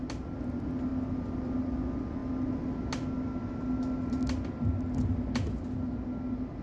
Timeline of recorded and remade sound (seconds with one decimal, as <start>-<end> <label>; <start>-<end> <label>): 0.0-6.6 recorded